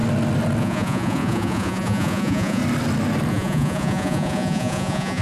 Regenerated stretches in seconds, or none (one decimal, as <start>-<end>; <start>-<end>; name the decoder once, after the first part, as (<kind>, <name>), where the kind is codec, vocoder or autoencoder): 0.6-2.6 (vocoder, Vocos); 3.3-5.2